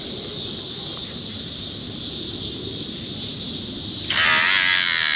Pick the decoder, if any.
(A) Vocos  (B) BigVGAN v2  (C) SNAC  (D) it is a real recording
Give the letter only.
D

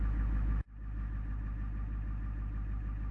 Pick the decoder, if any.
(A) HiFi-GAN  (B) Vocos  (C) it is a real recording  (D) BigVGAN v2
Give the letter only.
C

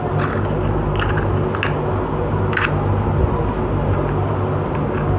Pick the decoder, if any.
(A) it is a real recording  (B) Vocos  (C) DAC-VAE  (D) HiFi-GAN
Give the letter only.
A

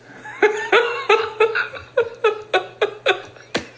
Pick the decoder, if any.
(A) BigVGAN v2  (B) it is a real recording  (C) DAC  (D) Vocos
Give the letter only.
B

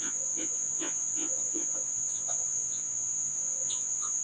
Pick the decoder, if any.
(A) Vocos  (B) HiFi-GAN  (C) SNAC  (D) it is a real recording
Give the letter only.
A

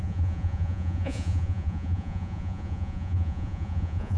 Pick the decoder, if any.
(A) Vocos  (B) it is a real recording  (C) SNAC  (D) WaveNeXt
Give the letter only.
A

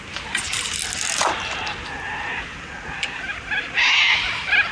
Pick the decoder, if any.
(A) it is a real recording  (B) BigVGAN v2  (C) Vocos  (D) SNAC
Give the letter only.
A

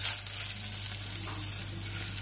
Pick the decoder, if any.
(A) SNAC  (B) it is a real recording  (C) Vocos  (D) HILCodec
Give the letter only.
B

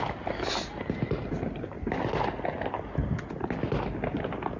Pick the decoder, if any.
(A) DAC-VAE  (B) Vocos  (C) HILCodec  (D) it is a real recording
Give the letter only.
D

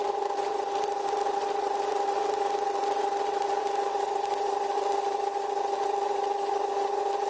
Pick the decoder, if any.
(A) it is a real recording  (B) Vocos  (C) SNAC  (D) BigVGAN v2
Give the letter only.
A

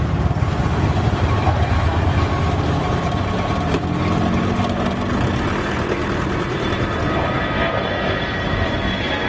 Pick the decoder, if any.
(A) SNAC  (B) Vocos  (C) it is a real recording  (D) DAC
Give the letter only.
C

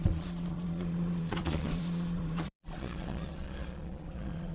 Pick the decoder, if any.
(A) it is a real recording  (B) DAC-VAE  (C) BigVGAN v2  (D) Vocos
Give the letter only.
D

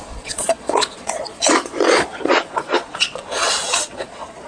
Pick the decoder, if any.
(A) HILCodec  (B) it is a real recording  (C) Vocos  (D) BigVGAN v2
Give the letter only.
C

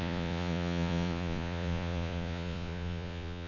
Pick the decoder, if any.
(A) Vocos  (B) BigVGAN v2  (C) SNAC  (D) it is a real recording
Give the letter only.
A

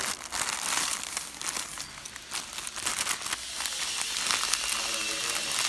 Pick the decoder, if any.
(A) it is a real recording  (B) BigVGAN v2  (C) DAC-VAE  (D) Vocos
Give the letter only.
A